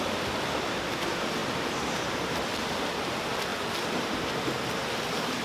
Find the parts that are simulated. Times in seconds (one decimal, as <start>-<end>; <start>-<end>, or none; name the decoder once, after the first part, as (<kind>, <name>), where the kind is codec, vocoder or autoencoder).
1.4-2.1 (vocoder, BigVGAN v2)